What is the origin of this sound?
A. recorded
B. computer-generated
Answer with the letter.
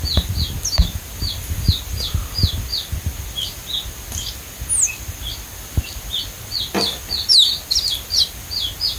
A